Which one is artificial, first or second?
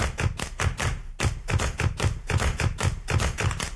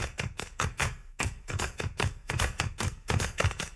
second